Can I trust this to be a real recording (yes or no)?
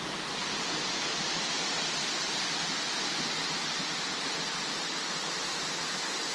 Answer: yes